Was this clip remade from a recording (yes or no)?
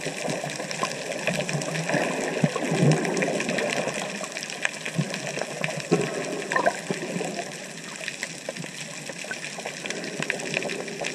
no